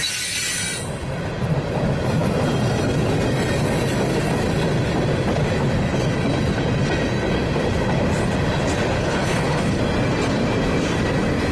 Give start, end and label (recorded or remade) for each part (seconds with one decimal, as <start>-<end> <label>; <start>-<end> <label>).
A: 0.0-9.0 recorded; 9.0-9.8 remade; 9.8-11.5 recorded